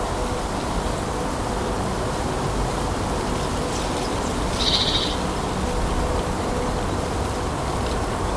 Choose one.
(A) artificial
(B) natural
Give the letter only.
B